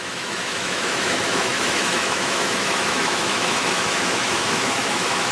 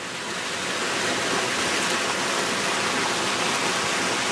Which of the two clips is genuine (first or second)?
second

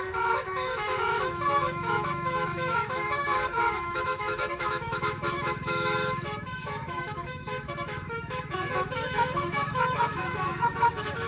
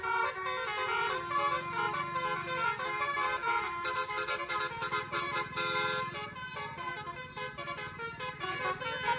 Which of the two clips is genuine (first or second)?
second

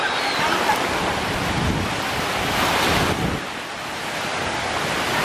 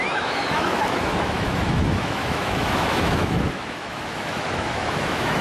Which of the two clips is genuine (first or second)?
first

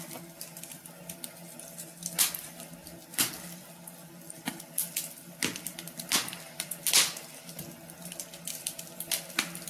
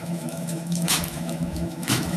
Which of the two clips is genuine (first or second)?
first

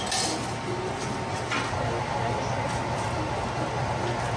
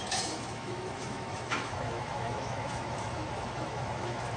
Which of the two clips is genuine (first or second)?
first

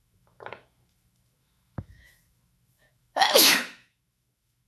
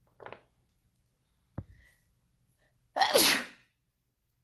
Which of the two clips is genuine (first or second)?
second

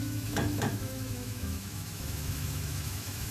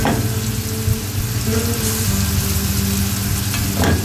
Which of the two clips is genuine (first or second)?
second